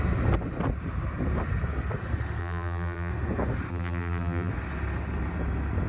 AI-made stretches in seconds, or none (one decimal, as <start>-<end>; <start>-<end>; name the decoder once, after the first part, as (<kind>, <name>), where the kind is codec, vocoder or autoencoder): 2.4-3.1 (vocoder, BigVGAN v2); 3.7-4.5